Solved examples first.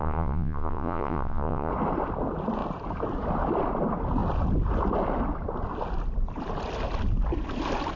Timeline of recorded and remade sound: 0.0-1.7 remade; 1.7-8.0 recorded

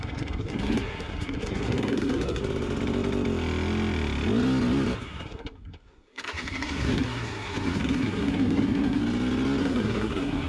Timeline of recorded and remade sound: 0.0-2.4 remade; 2.4-5.0 recorded; 5.0-9.0 remade; 9.0-9.6 recorded; 9.6-10.5 remade

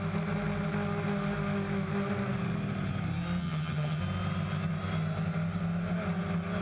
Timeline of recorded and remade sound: 0.0-3.4 recorded; 3.4-4.0 remade; 4.0-6.6 recorded

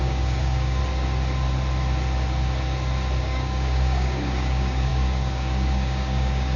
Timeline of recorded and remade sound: 0.0-0.8 remade; 0.8-3.2 recorded; 3.2-6.6 remade

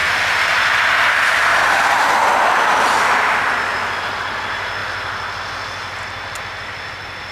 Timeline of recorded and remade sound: 0.0-7.3 recorded

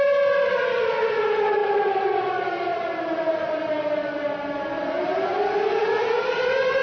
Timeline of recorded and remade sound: 0.0-1.6 recorded; 1.6-2.3 remade; 2.3-6.8 recorded

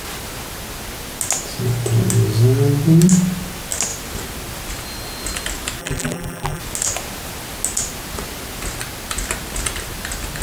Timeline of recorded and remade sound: 0.0-5.8 recorded; 5.8-6.6 remade; 6.6-10.4 recorded

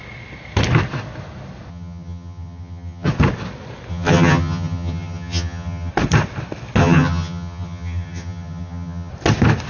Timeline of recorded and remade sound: 0.0-1.7 recorded; 1.7-3.1 remade; 3.1-3.9 recorded; 3.9-5.9 remade; 5.9-6.8 recorded; 6.8-9.1 remade; 9.1-9.7 recorded